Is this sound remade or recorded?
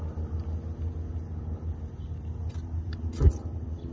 recorded